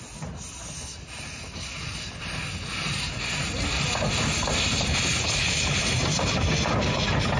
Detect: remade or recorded recorded